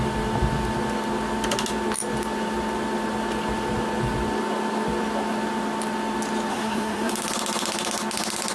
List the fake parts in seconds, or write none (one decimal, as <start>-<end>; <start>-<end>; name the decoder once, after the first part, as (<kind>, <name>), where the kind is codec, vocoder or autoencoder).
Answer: 6.5-7.1 (codec, SNAC)

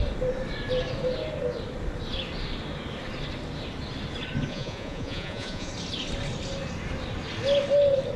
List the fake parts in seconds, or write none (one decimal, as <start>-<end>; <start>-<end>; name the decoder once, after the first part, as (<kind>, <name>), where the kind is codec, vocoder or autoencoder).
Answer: 4.5-5.7 (vocoder, Vocos)

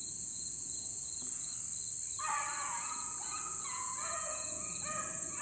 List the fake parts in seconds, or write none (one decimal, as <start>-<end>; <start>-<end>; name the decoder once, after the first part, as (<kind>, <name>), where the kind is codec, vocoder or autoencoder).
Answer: 0.0-1.5 (vocoder, Vocos); 2.6-5.4

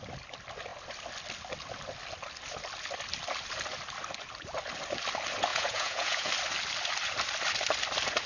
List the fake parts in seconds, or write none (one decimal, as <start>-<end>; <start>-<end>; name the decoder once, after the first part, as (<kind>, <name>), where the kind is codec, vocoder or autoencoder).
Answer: 5.5-6.3 (vocoder, Vocos)

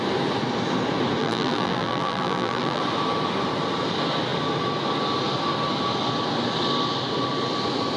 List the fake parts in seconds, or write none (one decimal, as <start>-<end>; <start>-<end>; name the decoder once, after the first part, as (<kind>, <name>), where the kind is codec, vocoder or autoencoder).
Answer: 1.2-2.8 (vocoder, BigVGAN v2)